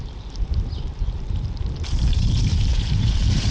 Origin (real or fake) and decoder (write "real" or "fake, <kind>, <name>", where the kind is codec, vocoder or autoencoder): fake, vocoder, BigVGAN v2